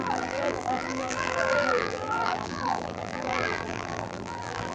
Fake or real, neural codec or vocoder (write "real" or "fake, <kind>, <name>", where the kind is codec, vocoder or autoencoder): fake, vocoder, BigVGAN v2